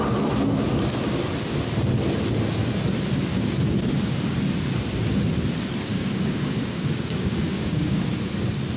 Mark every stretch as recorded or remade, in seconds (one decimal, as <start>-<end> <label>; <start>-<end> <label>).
0.0-5.9 recorded; 5.9-8.0 remade; 8.0-8.8 recorded

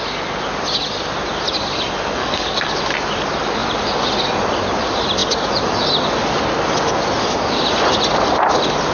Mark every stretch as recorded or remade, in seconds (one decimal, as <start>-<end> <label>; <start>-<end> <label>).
0.0-2.2 recorded; 2.2-2.8 remade; 2.8-8.9 recorded

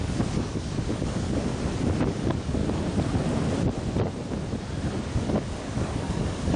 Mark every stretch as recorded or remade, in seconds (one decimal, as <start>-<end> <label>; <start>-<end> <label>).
0.0-1.5 remade; 1.5-2.1 recorded; 2.1-2.6 remade; 2.6-5.0 recorded; 5.0-6.6 remade